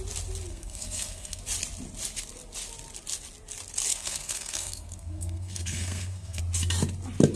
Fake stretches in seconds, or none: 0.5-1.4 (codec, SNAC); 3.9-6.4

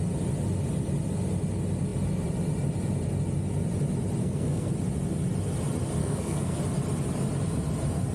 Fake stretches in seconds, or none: 4.2-4.7 (codec, SNAC); 6.0-6.6